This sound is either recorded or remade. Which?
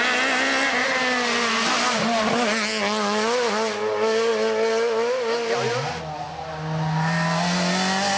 recorded